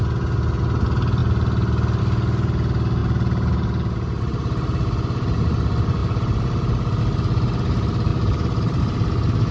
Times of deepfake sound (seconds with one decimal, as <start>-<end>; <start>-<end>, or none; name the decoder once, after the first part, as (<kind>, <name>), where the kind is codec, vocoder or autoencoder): 3.0-5.5 (vocoder, BigVGAN v2); 8.1-8.8

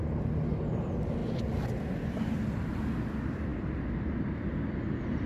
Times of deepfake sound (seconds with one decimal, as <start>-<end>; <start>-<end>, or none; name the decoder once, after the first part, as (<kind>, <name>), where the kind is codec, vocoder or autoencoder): none

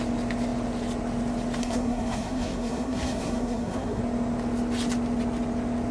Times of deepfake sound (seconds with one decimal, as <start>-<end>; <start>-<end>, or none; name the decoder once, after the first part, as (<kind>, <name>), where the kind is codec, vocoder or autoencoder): 1.6-4.0 (codec, SNAC)

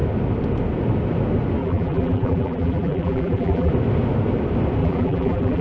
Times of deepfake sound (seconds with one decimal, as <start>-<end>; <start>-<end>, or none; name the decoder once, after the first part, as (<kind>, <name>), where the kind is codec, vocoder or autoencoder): 1.6-3.7 (vocoder, BigVGAN v2); 4.8-5.6

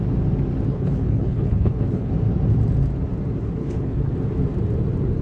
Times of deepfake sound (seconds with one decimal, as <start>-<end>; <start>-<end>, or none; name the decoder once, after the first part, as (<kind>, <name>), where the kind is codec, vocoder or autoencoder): 0.7-2.1 (codec, HILCodec); 3.6-4.1